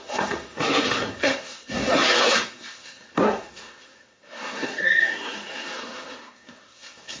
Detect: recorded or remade remade